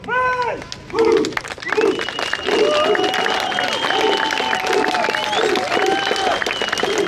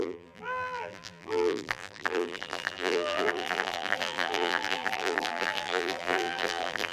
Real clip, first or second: first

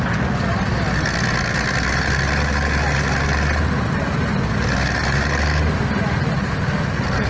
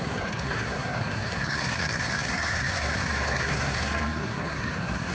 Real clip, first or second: first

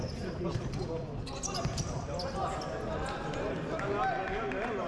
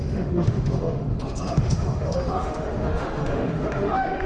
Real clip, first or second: first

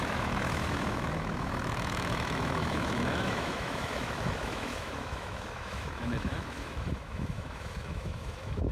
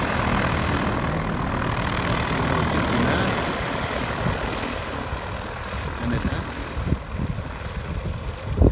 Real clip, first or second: second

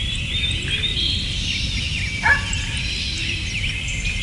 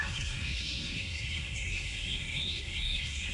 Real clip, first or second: first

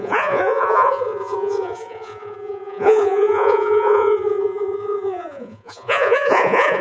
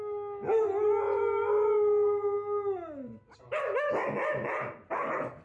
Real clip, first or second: second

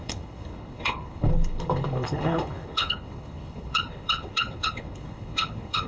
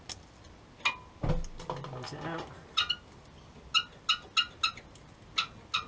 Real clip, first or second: second